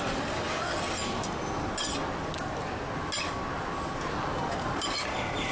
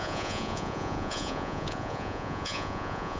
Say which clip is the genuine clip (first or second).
first